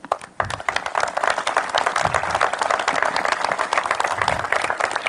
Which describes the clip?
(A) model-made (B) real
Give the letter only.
B